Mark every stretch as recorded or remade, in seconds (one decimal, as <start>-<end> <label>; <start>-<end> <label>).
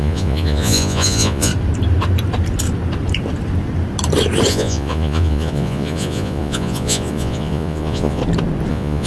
0.0-1.5 remade; 1.5-4.5 recorded; 4.5-8.2 remade; 8.2-8.7 recorded; 8.7-9.1 remade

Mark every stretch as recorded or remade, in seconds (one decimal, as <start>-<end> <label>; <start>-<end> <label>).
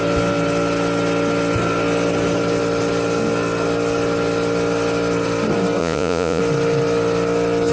0.0-5.8 recorded; 5.8-6.4 remade; 6.4-7.7 recorded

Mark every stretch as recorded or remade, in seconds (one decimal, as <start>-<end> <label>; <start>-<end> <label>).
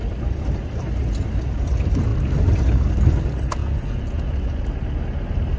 0.0-3.6 recorded; 3.6-4.6 remade; 4.6-5.6 recorded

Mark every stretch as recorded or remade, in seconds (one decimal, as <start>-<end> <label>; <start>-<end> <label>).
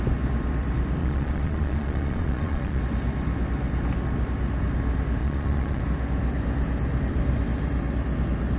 0.0-1.0 recorded; 1.0-2.8 remade; 2.8-5.2 recorded; 5.2-5.8 remade; 5.8-8.6 recorded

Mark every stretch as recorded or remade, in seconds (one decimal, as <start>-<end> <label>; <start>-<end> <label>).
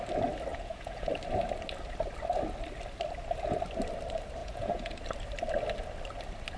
0.0-0.5 recorded; 0.5-1.1 remade; 1.1-4.4 recorded; 4.4-5.0 remade; 5.0-6.6 recorded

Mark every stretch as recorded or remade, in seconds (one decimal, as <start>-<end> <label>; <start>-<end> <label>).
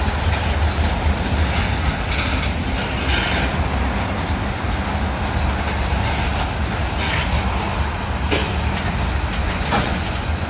0.0-9.4 recorded; 9.4-10.5 remade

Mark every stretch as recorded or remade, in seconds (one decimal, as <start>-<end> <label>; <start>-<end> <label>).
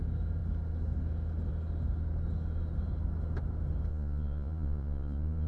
0.0-3.9 recorded; 3.9-5.5 remade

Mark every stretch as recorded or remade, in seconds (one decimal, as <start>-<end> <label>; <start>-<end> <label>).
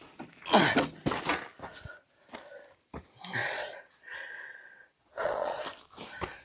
0.0-3.4 recorded; 3.4-5.6 remade; 5.6-6.4 recorded